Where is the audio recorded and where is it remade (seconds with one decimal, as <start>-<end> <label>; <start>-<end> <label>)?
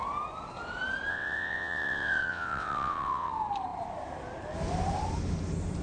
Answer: 0.0-1.1 recorded; 1.1-3.3 remade; 3.3-5.8 recorded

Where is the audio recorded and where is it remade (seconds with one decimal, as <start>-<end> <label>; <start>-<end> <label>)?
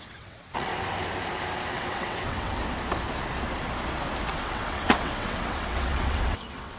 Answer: 0.0-0.7 remade; 0.7-1.7 recorded; 1.7-2.6 remade; 2.6-4.2 recorded; 4.2-6.8 remade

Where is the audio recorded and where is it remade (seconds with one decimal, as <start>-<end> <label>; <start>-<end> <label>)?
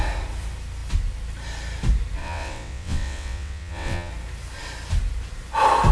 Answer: 0.0-2.2 recorded; 2.2-4.1 remade; 4.1-5.9 recorded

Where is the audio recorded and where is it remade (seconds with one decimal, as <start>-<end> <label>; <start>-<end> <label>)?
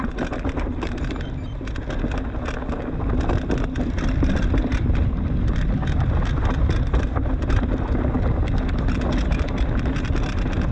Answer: 0.0-10.7 recorded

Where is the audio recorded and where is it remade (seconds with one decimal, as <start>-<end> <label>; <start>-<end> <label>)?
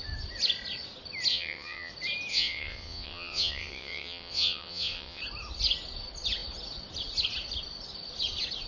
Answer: 0.0-1.3 recorded; 1.3-1.9 remade; 1.9-2.3 recorded; 2.3-5.2 remade; 5.2-8.7 recorded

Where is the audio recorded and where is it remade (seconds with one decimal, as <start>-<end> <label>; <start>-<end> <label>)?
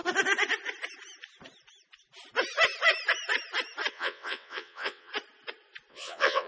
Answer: 0.0-3.9 recorded; 3.9-5.1 remade; 5.1-5.9 recorded; 5.9-6.5 remade